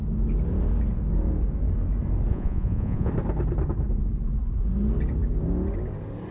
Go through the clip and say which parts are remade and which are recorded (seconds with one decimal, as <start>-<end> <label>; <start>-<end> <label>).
0.0-2.3 recorded; 2.3-3.1 remade; 3.1-6.3 recorded